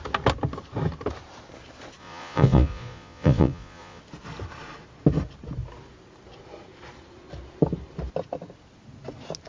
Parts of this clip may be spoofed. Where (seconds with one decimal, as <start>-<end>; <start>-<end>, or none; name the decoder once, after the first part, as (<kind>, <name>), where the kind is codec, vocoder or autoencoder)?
2.0-4.0 (vocoder, Vocos)